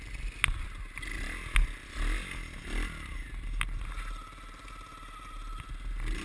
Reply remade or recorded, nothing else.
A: recorded